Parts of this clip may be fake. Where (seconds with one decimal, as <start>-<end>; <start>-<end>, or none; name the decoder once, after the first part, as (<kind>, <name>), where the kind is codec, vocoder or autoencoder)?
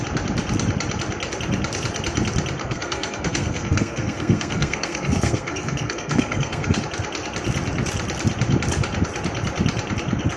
2.6-6.8 (codec, SNAC)